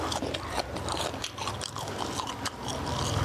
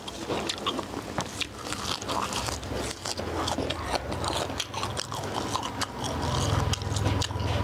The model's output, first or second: first